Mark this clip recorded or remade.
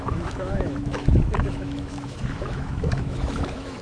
remade